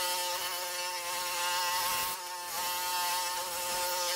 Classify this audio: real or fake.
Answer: real